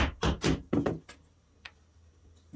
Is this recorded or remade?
recorded